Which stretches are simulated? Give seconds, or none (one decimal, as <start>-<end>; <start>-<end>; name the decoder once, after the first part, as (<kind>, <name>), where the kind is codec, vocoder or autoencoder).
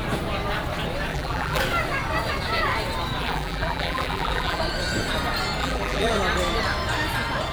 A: 1.1-1.6 (vocoder, BigVGAN v2); 3.2-4.6; 5.6-6.1